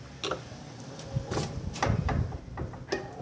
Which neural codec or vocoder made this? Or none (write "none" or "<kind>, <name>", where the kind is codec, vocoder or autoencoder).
none